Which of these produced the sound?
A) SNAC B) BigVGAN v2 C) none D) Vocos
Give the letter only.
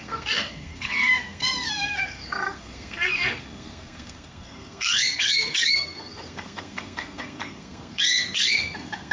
A